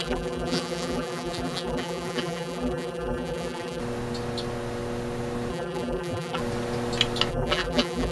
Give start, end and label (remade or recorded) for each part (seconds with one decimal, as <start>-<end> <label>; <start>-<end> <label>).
0.0-3.8 remade; 3.8-5.5 recorded; 5.5-6.4 remade; 6.4-7.3 recorded; 7.3-8.1 remade